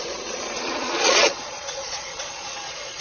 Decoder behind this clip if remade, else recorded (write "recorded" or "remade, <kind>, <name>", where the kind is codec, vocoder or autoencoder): remade, vocoder, Vocos